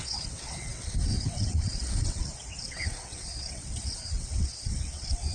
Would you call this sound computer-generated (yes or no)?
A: yes